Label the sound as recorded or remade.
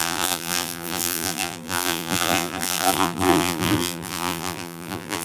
remade